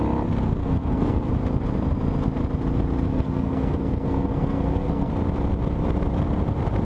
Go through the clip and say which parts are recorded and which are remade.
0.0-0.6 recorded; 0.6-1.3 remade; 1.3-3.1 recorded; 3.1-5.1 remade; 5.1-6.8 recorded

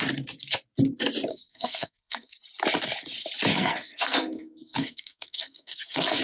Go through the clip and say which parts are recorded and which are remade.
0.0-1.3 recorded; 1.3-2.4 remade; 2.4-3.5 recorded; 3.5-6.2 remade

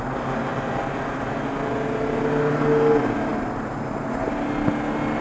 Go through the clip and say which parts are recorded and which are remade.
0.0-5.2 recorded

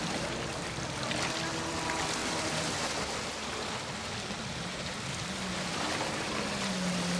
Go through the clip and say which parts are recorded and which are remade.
0.0-2.2 recorded; 2.2-3.1 remade; 3.1-7.2 recorded

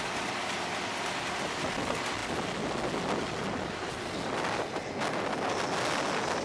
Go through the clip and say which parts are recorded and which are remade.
0.0-6.4 recorded

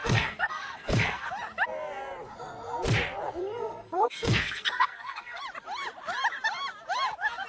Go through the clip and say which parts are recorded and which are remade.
0.0-1.3 remade; 1.3-3.4 recorded; 3.4-5.4 remade; 5.4-7.5 recorded

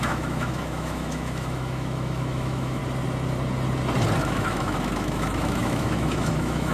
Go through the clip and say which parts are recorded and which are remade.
0.0-2.8 remade; 2.8-4.2 recorded; 4.2-6.7 remade

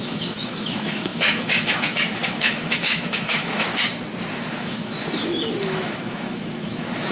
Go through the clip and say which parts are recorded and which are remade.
0.0-3.7 remade; 3.7-4.5 recorded; 4.5-7.1 remade